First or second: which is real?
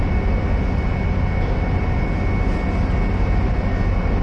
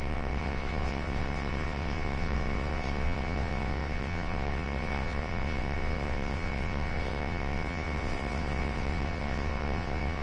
first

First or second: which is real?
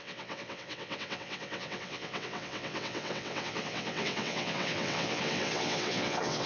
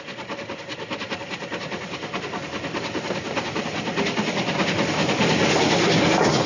second